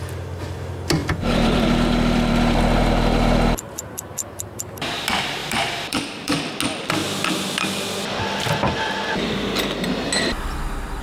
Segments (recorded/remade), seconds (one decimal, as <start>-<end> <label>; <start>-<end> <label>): 0.0-1.0 recorded; 1.0-2.3 remade; 2.3-5.4 recorded; 5.4-6.5 remade; 6.5-11.0 recorded